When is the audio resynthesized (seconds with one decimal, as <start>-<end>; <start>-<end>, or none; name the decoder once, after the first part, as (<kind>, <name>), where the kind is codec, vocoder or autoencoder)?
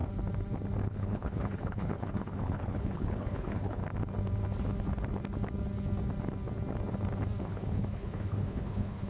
0.9-3.8 (codec, HILCodec); 7.4-9.1